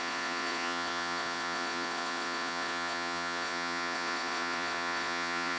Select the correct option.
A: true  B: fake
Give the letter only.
B